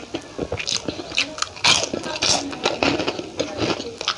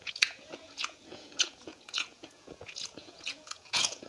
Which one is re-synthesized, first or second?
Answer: second